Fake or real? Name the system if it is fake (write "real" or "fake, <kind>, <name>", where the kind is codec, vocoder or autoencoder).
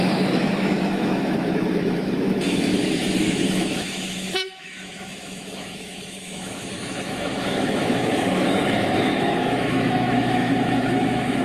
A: fake, autoencoder, DAC-VAE